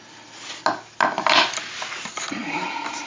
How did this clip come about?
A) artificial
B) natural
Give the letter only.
B